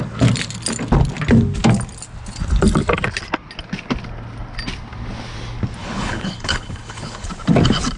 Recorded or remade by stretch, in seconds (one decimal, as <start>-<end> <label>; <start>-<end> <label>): 0.0-5.8 recorded; 5.8-7.3 remade; 7.3-8.0 recorded